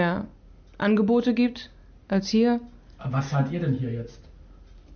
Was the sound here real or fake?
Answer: real